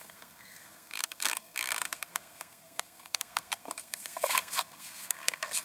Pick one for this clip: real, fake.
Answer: fake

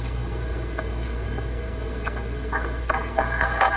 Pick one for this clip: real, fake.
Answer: fake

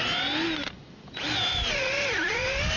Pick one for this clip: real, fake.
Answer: real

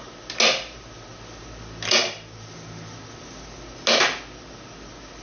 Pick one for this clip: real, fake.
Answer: real